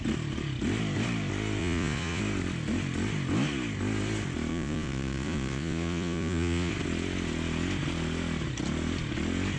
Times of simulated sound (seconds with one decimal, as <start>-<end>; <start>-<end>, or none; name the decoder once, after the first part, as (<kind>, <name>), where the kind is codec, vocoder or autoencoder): 1.6-2.2 (vocoder, Vocos); 4.5-6.7